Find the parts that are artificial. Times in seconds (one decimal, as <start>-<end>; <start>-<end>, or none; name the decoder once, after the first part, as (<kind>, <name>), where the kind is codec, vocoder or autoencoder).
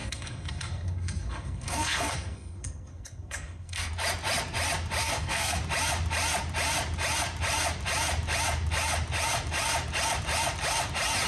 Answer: 0.0-3.9 (codec, SNAC); 5.0-5.6